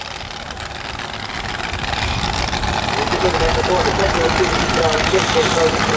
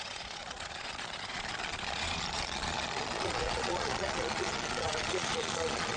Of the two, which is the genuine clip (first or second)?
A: first